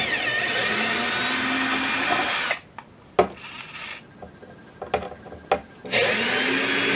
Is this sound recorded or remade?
recorded